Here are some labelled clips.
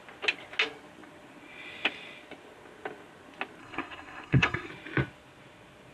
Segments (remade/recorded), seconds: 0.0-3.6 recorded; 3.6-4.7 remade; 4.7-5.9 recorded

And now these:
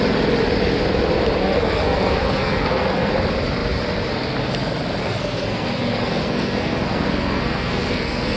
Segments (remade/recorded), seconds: 0.0-1.4 recorded; 1.4-3.1 remade; 3.1-5.0 recorded; 5.0-8.4 remade

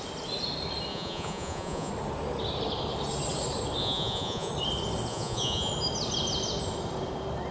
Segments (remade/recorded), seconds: 0.0-0.9 recorded; 0.9-1.9 remade; 1.9-3.8 recorded; 3.8-4.5 remade; 4.5-5.1 recorded; 5.1-5.7 remade; 5.7-7.5 recorded

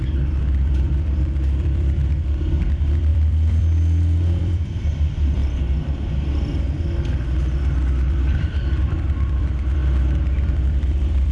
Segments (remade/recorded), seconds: 0.0-5.4 remade; 5.4-7.6 recorded; 7.6-9.8 remade; 9.8-10.5 recorded; 10.5-11.3 remade